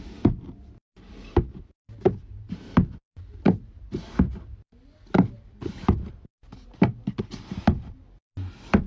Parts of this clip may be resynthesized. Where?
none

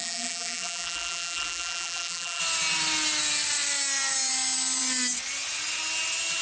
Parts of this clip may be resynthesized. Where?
0.0-2.4 (vocoder, BigVGAN v2)

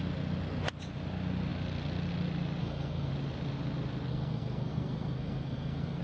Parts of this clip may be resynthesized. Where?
2.6-3.1 (codec, SNAC); 4.1-6.0

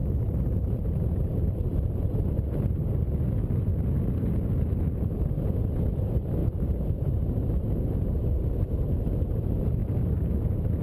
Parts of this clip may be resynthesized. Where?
0.0-2.1 (vocoder, BigVGAN v2); 3.7-4.4; 6.4-7.4

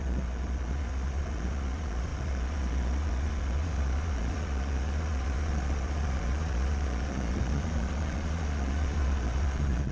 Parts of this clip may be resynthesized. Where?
0.0-9.9 (vocoder, Vocos)

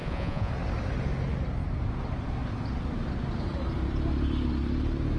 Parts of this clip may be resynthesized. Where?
0.0-0.5 (vocoder, Vocos)